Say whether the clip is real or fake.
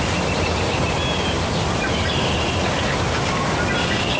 real